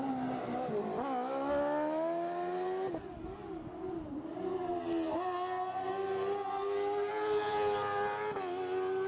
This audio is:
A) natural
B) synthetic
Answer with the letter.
A